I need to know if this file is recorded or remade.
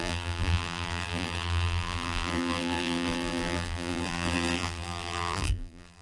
remade